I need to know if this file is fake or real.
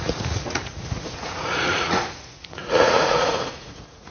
fake